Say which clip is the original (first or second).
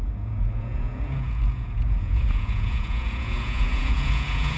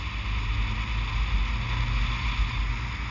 second